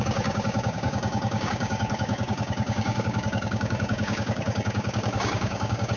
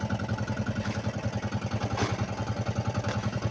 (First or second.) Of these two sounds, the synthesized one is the first